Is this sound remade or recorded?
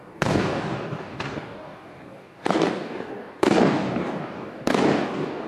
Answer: remade